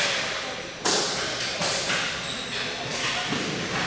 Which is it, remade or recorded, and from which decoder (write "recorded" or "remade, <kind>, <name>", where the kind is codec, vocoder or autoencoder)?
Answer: recorded